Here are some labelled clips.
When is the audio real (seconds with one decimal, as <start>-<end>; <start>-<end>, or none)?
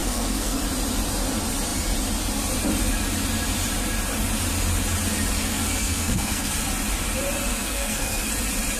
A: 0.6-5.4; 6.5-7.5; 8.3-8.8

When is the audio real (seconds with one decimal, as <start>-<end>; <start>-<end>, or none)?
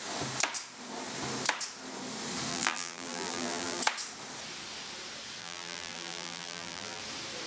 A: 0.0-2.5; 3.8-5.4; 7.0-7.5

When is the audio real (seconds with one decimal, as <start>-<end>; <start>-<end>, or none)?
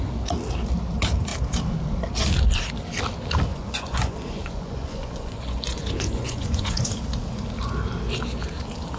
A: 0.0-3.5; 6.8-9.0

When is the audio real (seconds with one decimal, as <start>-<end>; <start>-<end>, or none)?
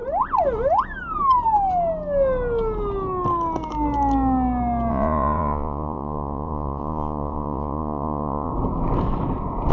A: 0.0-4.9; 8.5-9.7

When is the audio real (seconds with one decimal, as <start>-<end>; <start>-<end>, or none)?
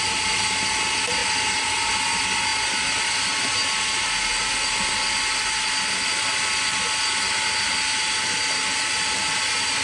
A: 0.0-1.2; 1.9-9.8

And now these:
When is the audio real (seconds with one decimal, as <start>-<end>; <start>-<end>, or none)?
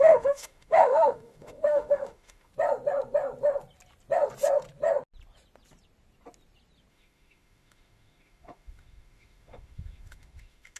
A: 2.5-6.9